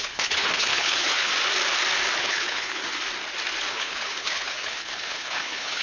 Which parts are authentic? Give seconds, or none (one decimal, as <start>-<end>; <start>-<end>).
1.3-2.2; 2.8-3.7